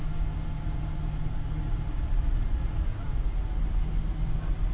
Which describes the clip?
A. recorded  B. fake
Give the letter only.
A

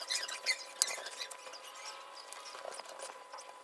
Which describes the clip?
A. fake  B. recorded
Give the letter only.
B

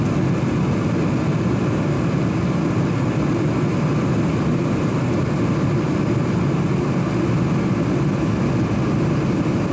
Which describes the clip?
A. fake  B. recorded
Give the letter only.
B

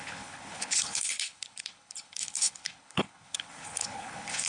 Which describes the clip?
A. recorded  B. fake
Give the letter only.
B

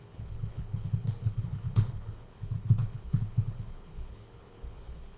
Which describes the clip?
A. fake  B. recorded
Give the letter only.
A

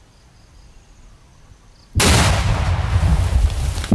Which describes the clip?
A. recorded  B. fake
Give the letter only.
A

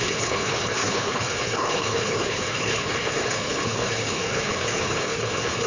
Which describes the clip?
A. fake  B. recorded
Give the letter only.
A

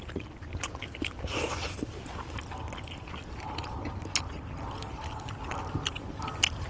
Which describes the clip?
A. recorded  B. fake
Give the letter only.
A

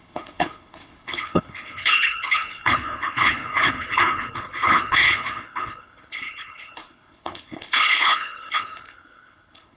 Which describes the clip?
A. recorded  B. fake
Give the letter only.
B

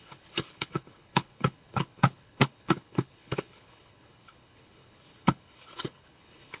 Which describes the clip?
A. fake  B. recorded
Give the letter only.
A